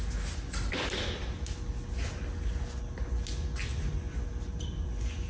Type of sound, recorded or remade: recorded